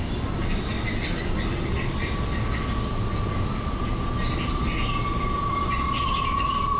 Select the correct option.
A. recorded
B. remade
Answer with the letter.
A